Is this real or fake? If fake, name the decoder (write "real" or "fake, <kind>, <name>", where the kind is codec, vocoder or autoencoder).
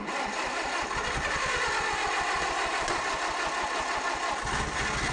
real